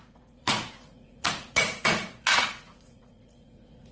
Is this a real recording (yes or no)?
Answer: no